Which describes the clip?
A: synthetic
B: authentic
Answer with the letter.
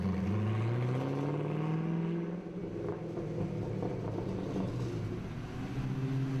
B